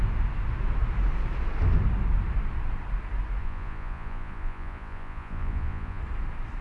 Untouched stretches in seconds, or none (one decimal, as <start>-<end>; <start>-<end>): 0.0-3.4; 6.0-6.6